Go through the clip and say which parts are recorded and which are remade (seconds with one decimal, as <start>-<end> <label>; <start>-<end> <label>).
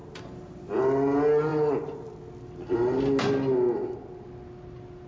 0.0-0.7 remade; 0.7-5.1 recorded